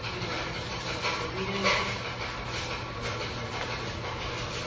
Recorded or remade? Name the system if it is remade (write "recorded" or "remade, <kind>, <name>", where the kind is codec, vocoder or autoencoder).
recorded